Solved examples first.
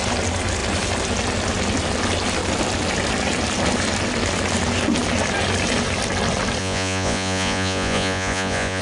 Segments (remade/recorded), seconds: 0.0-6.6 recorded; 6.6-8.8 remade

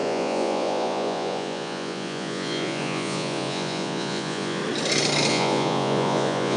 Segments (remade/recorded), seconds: 0.0-4.6 remade; 4.6-5.3 recorded; 5.3-6.6 remade